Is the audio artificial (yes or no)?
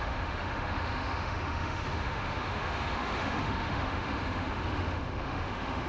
yes